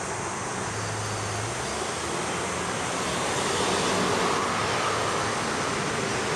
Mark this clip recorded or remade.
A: recorded